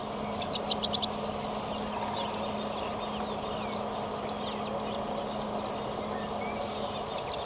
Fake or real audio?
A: real